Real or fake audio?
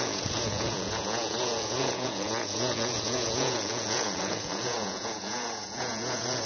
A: fake